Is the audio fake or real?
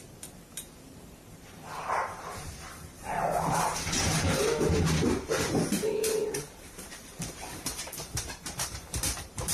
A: fake